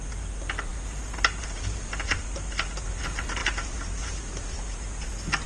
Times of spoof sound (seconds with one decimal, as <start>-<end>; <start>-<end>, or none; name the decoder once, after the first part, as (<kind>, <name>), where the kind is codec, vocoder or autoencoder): 0.7-2.2 (vocoder, BigVGAN v2)